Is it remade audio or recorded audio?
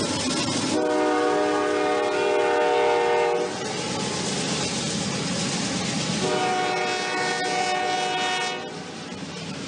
recorded